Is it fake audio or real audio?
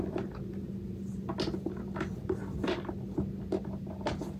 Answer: real